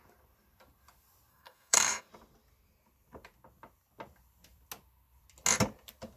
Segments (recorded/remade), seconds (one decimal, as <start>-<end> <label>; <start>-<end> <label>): 0.0-1.3 recorded; 1.3-2.1 remade; 2.1-6.2 recorded